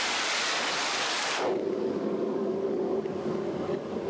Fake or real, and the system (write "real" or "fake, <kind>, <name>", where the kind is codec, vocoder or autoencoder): fake, codec, DAC